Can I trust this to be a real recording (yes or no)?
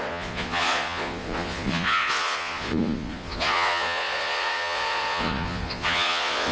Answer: no